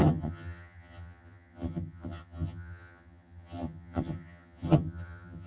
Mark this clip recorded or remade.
remade